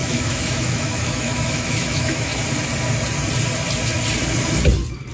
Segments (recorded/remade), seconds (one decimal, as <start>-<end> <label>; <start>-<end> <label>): 0.0-2.3 remade; 2.3-5.1 recorded